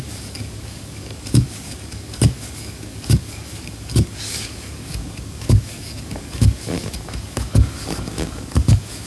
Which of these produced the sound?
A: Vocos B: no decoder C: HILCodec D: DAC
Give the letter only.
D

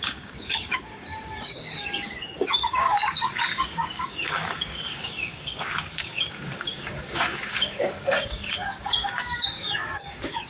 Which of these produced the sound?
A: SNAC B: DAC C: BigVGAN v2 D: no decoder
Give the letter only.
B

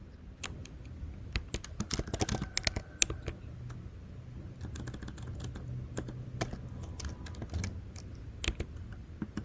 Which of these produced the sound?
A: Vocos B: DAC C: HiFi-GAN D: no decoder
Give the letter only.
D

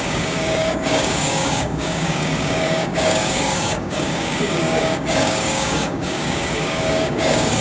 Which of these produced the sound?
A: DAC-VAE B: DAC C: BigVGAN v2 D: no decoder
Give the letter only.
B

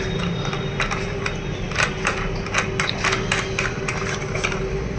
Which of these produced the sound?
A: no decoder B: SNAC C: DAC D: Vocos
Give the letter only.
A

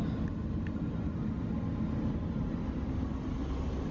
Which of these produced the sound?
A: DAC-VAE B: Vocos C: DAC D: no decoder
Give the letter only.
D